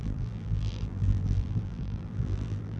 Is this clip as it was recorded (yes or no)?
no